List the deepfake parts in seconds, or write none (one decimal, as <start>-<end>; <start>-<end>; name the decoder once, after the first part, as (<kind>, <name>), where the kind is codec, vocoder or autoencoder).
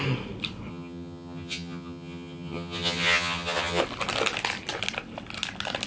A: 0.7-3.8 (vocoder, HiFi-GAN)